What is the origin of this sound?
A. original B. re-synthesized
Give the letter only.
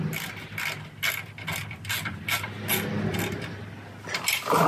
A